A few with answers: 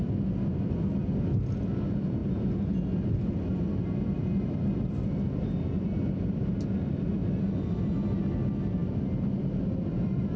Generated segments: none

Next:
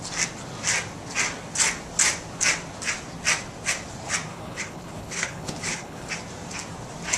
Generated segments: 4.3-6.1 (codec, HILCodec)

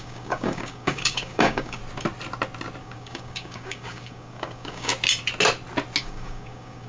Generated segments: 0.0-1.8 (codec, DAC); 2.8-4.9; 6.0-6.9